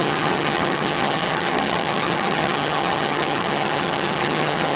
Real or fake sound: fake